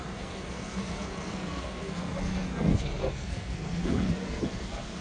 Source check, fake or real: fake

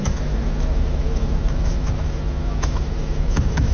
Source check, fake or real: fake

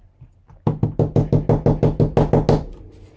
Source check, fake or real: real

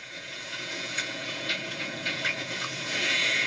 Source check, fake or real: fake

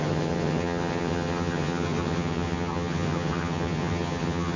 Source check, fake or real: fake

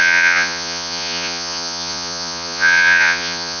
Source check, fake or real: fake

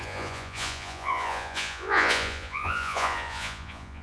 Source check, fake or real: fake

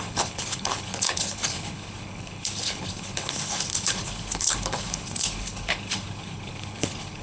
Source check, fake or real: fake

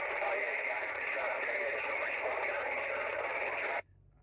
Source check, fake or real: fake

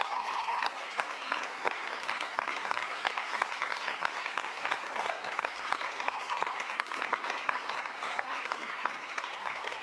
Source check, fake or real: fake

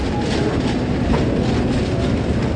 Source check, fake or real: real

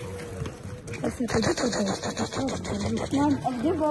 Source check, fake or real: real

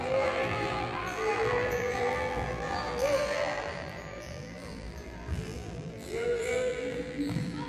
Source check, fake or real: fake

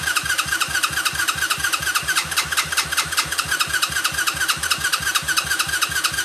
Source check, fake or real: fake